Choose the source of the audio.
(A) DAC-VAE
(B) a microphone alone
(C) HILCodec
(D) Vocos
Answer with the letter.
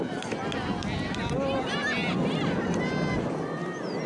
B